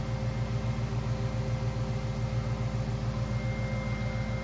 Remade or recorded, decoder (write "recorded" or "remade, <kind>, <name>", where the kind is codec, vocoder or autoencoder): recorded